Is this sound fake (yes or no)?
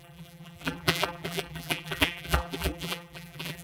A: yes